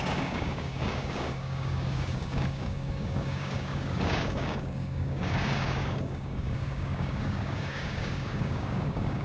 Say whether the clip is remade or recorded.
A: remade